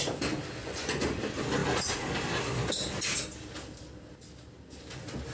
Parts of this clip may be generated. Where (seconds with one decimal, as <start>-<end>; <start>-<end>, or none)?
0.6-1.2